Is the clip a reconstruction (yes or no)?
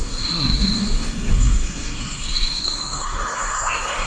yes